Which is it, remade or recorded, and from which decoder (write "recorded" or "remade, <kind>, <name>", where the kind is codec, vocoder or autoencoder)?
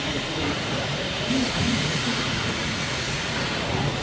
remade, vocoder, Vocos